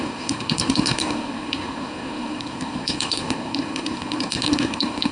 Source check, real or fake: fake